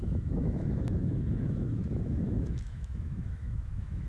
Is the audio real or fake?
fake